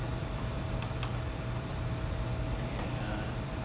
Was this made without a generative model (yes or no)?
no